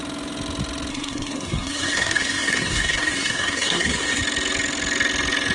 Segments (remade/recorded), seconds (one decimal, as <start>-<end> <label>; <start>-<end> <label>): 0.0-0.9 recorded; 0.9-4.2 remade; 4.2-5.5 recorded

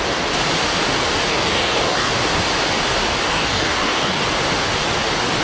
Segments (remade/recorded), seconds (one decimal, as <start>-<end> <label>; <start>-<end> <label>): 0.0-1.3 recorded; 1.3-2.1 remade; 2.1-3.3 recorded; 3.3-4.2 remade; 4.2-5.4 recorded

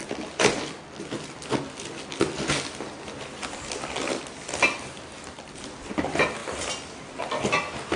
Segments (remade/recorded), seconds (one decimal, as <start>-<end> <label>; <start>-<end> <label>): 0.0-6.4 recorded; 6.4-7.3 remade; 7.3-8.0 recorded